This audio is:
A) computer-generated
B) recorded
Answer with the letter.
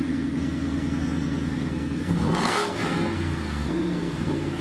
A